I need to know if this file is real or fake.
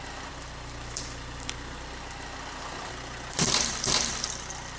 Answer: fake